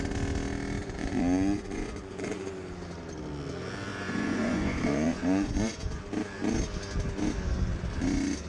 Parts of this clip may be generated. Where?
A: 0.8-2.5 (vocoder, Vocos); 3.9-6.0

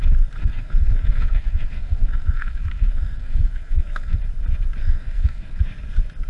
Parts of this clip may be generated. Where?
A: 0.4-4.2 (codec, SNAC); 4.8-5.6

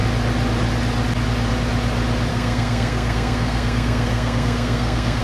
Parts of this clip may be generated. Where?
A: 2.3-5.2 (codec, SNAC)

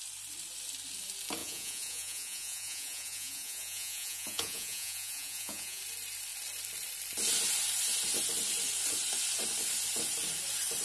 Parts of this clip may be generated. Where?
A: 1.4-5.8 (vocoder, Vocos)

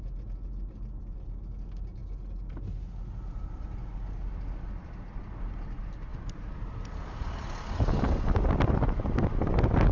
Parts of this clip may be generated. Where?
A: none

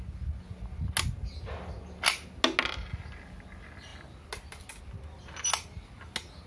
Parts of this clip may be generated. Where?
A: none